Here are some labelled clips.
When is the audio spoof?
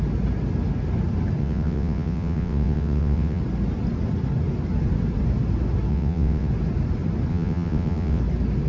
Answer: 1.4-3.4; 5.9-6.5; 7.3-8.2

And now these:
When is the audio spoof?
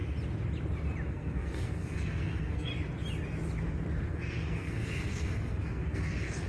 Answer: 1.1-2.7; 4.1-6.5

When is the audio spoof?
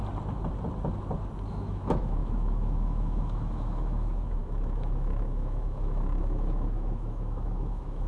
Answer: 1.5-8.1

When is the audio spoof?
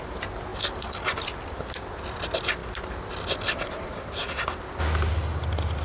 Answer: none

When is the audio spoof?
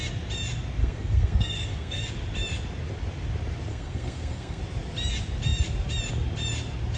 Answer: 0.8-2.0; 3.7-4.6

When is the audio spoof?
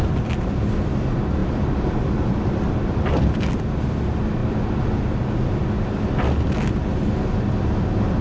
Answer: 1.4-3.6; 4.4-5.0